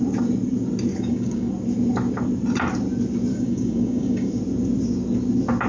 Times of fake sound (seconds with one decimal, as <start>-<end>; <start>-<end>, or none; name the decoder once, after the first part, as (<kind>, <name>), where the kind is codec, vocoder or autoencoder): 0.9-1.5 (codec, DAC); 3.3-4.4